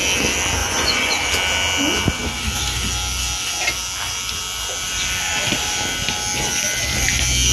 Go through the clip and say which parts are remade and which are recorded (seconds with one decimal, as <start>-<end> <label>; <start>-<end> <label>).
0.0-0.6 recorded; 0.6-1.3 remade; 1.3-7.5 recorded

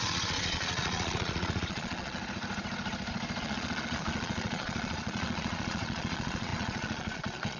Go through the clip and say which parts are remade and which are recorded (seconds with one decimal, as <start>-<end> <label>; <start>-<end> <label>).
0.0-2.2 remade; 2.2-3.4 recorded; 3.4-7.6 remade

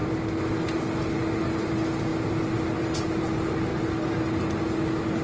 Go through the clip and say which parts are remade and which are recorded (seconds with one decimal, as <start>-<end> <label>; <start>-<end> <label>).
0.0-5.2 recorded

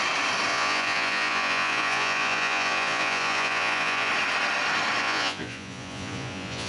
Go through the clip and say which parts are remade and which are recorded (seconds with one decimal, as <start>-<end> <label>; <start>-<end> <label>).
0.0-0.5 recorded; 0.5-4.1 remade; 4.1-5.0 recorded; 5.0-6.7 remade